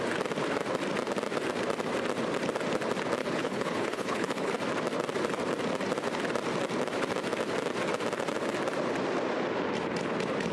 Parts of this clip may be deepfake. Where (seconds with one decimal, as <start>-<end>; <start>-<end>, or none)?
3.2-4.5